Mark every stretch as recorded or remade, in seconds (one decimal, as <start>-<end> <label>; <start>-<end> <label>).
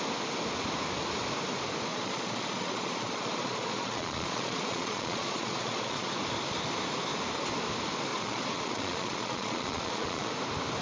0.0-1.9 recorded; 1.9-6.1 remade; 6.1-8.1 recorded; 8.1-10.3 remade; 10.3-10.8 recorded